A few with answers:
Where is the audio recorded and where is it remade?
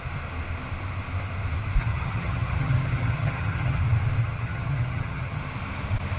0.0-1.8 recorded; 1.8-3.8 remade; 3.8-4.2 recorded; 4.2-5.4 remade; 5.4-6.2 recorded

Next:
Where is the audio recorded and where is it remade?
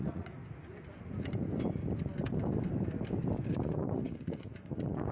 0.0-0.4 remade; 0.4-3.5 recorded; 3.5-5.1 remade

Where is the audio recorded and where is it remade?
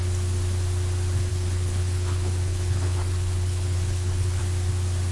0.0-1.3 recorded; 1.3-4.4 remade; 4.4-5.1 recorded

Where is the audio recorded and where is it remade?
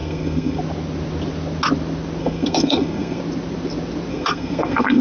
0.0-0.6 remade; 0.6-2.2 recorded; 2.2-3.2 remade; 3.2-4.1 recorded; 4.1-5.0 remade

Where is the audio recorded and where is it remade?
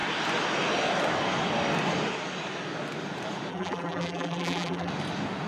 0.0-3.5 recorded; 3.5-4.9 remade; 4.9-5.5 recorded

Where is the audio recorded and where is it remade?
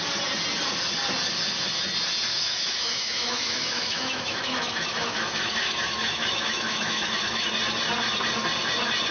0.0-2.3 recorded; 2.3-7.5 remade; 7.5-9.1 recorded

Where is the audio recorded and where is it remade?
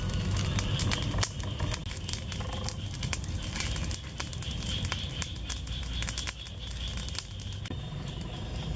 0.0-8.8 recorded